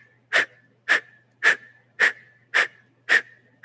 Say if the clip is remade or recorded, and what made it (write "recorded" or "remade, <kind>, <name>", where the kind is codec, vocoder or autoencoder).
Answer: recorded